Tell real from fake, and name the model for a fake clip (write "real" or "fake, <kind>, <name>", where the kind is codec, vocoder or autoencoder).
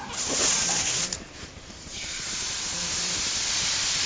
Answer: fake, vocoder, BigVGAN v2